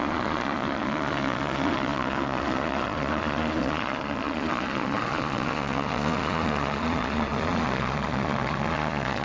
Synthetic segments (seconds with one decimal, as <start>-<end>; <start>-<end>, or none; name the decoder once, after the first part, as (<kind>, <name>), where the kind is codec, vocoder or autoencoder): 0.0-9.2 (vocoder, Vocos)